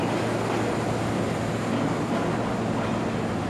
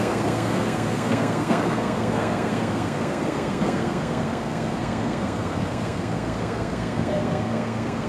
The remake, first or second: second